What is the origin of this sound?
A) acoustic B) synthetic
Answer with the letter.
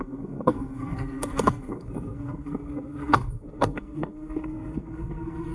B